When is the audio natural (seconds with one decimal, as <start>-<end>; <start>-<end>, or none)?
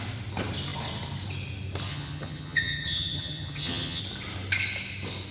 0.0-1.9; 4.0-5.3